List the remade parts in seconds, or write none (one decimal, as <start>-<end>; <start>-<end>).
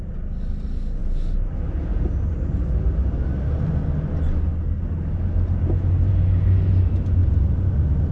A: none